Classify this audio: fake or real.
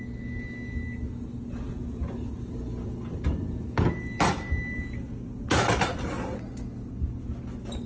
real